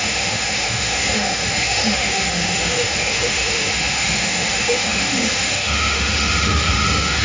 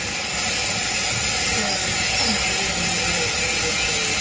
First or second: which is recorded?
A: second